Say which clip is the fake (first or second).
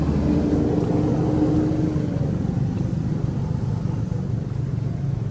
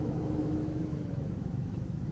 second